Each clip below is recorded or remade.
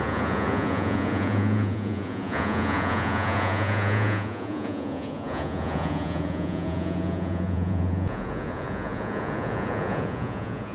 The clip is remade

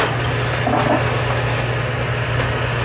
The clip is recorded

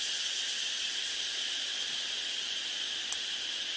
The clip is recorded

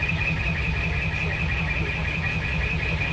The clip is recorded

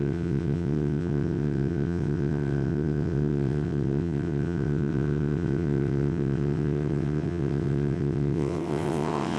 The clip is remade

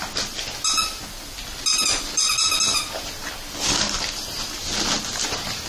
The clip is recorded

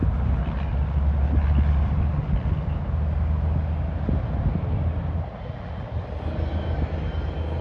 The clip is recorded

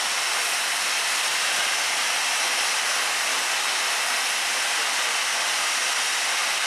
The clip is recorded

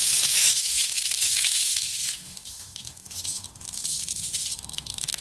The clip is remade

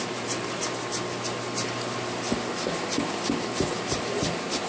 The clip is recorded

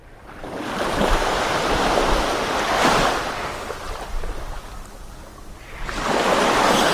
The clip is recorded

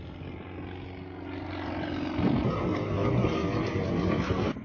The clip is recorded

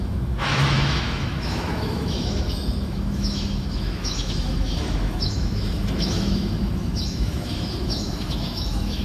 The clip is remade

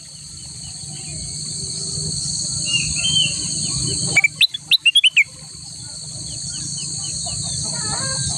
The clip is recorded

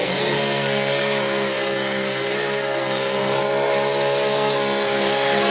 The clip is remade